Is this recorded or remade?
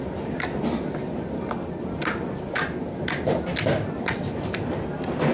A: recorded